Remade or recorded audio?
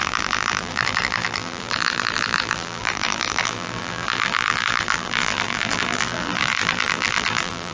remade